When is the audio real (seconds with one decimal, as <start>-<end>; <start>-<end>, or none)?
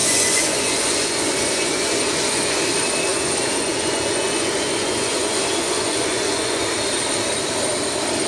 2.6-3.1; 6.6-8.3